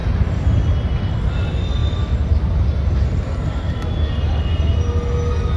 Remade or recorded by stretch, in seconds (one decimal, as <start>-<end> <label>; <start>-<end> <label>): 0.0-5.6 recorded